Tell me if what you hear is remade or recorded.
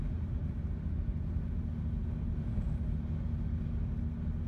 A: recorded